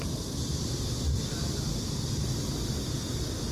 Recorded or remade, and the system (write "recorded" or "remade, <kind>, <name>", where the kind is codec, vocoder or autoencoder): recorded